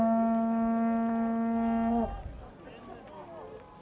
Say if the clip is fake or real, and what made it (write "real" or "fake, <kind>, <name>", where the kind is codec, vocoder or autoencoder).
real